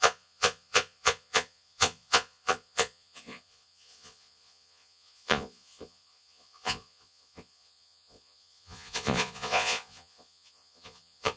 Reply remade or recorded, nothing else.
remade